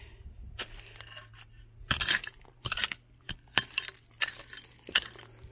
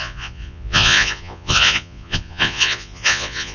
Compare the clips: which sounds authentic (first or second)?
first